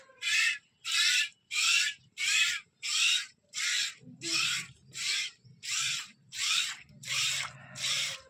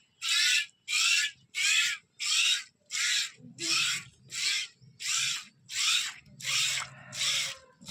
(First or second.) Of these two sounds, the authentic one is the second